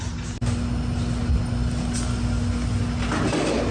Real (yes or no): yes